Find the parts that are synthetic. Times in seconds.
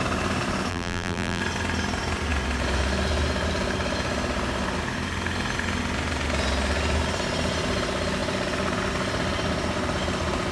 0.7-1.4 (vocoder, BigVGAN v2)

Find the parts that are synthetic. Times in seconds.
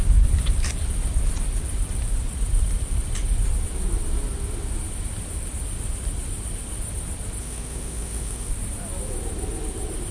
7.4-8.5 (autoencoder, DAC-VAE)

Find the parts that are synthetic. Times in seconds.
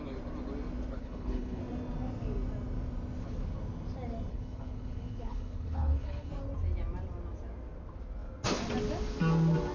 1.0-1.6 (codec, HILCodec); 4.3-6.3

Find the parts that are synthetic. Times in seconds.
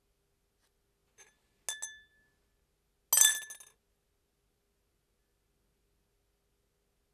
none